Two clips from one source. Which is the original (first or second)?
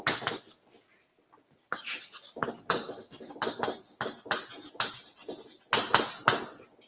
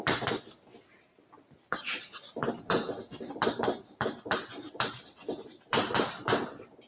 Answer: first